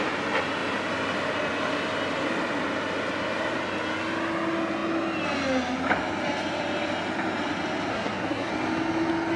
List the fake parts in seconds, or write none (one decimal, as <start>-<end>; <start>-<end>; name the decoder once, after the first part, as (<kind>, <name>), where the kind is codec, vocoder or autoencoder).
7.9-8.5 (codec, SNAC)